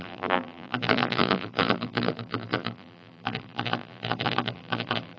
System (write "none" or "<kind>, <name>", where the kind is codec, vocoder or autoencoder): vocoder, BigVGAN v2